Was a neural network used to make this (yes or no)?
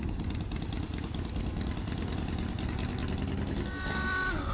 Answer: no